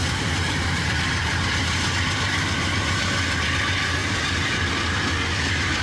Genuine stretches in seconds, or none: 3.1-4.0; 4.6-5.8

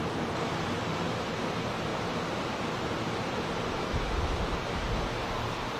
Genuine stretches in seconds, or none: 0.0-1.9; 5.0-5.8

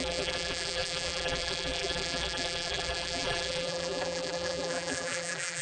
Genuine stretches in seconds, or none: none

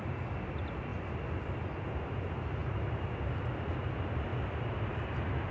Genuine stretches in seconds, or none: 0.0-0.9; 1.5-2.6; 3.7-4.3

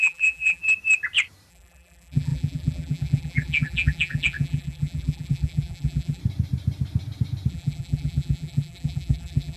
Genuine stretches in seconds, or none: 0.6-1.5; 6.2-7.5

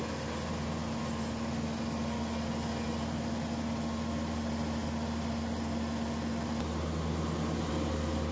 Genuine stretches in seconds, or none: 0.0-8.3

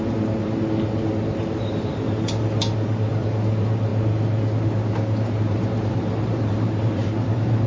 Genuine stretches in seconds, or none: 3.9-5.4

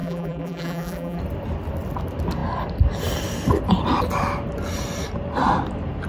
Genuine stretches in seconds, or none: 1.2-6.1